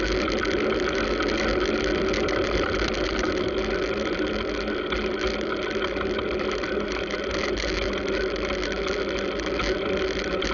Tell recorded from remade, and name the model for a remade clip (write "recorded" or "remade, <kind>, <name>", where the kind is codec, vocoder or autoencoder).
recorded